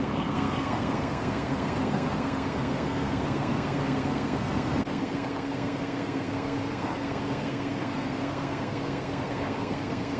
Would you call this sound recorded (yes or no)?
no